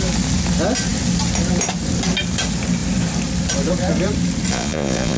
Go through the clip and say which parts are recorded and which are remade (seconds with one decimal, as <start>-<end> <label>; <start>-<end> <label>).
0.0-4.5 recorded; 4.5-5.2 remade